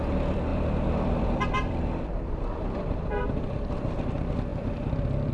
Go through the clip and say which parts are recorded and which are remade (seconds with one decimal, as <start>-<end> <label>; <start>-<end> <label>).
0.0-5.3 remade